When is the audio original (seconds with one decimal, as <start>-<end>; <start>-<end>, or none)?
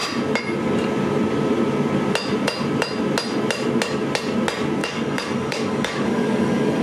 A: 0.0-4.8